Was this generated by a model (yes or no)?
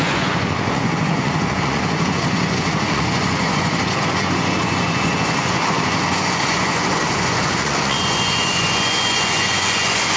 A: yes